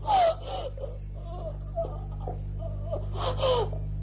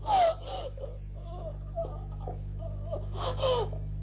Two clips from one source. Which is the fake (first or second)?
second